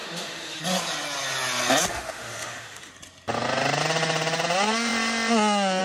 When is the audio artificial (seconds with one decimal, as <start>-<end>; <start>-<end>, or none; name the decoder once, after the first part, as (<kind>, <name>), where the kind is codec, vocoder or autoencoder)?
0.0-0.6 (autoencoder, DAC-VAE); 1.9-2.9